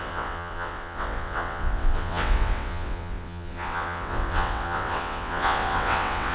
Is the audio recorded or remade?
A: remade